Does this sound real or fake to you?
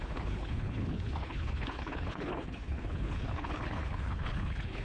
fake